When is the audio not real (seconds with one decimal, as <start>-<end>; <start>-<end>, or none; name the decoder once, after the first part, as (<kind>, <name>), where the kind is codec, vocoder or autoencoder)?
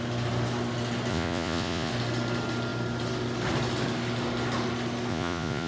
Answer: 1.1-1.9 (vocoder, Vocos); 5.1-5.7